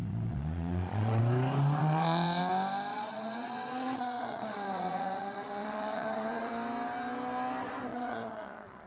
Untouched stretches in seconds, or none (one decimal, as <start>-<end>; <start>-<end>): 1.2-1.8; 2.4-2.9; 6.5-7.9